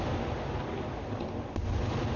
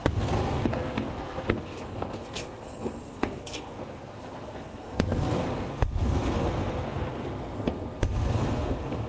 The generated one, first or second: second